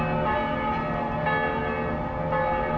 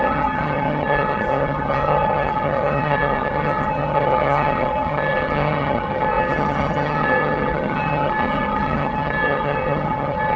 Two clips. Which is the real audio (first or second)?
first